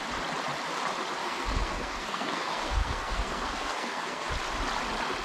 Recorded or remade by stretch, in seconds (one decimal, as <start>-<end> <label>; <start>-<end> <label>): 0.0-1.2 recorded; 1.2-4.3 remade; 4.3-5.2 recorded